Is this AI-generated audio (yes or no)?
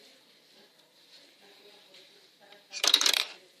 yes